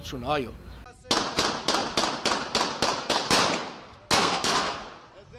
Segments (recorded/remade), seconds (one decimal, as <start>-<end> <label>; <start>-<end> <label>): 0.0-4.2 recorded; 4.2-4.8 remade; 4.8-5.4 recorded